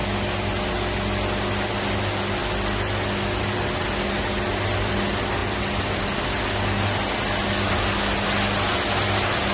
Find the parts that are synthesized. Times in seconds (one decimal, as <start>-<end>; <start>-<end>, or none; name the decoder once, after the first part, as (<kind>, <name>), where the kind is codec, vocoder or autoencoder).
none